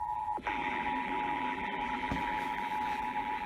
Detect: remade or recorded remade